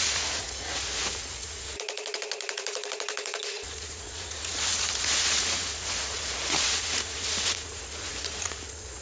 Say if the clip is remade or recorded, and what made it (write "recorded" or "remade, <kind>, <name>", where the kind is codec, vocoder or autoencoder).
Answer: remade, vocoder, Vocos